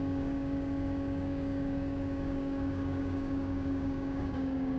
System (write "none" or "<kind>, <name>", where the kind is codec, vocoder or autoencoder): codec, DAC